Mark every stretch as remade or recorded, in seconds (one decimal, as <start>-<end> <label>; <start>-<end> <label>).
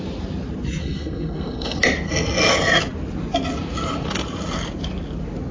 0.0-0.8 recorded; 0.8-1.8 remade; 1.8-5.5 recorded